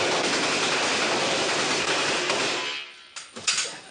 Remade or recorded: recorded